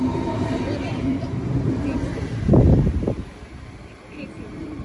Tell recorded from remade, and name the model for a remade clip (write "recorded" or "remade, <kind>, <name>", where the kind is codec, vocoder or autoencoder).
remade, vocoder, BigVGAN v2